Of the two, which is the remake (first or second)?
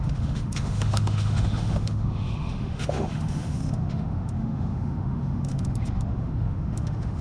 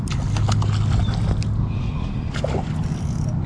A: first